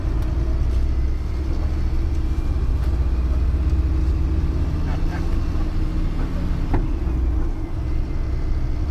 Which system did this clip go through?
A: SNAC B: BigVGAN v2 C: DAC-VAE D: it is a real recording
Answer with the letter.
D